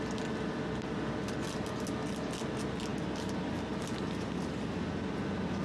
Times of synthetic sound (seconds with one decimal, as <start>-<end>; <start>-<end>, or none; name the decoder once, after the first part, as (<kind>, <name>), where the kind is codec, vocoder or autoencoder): none